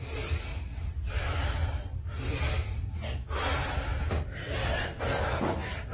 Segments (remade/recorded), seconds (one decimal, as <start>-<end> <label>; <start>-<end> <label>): 0.0-0.5 recorded; 0.5-3.5 remade; 3.5-3.9 recorded; 3.9-5.0 remade; 5.0-5.9 recorded